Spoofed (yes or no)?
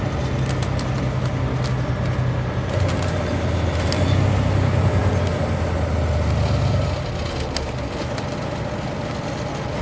no